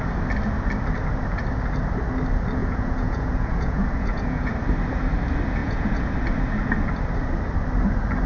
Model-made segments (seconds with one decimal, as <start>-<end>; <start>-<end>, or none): 2.6-4.5; 5.6-6.1